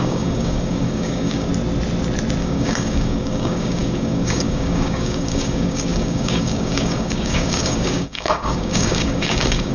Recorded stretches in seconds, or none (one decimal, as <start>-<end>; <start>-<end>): 1.5-2.4